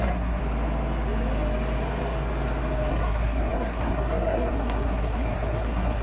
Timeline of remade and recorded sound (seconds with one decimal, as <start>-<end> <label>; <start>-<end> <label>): 0.0-0.4 remade; 0.4-2.9 recorded; 2.9-6.0 remade